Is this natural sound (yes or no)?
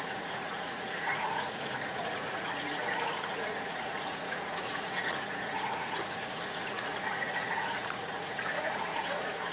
no